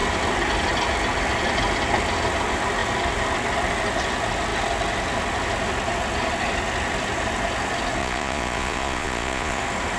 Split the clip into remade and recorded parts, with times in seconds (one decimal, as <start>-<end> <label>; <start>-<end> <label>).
0.0-8.0 recorded; 8.0-9.6 remade; 9.6-10.0 recorded